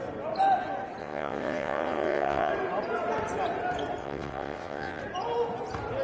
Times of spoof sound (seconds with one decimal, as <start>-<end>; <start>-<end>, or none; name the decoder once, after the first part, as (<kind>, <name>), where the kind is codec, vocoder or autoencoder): 1.0-2.5 (vocoder, WaveNeXt); 4.0-5.0